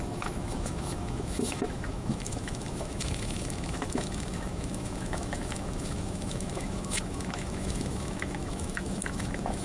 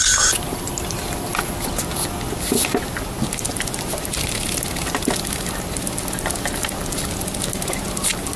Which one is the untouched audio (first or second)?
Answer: second